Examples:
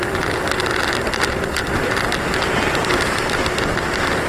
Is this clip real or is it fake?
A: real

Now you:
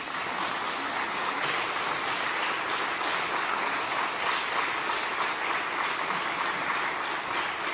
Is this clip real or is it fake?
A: real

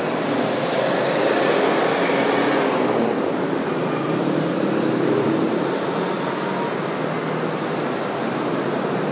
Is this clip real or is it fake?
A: real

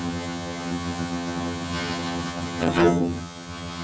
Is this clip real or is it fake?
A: fake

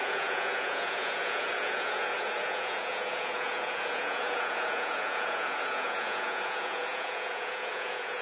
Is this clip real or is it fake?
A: fake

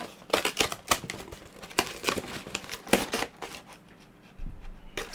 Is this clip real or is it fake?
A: real